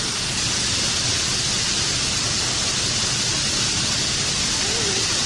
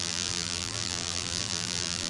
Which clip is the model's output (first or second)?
second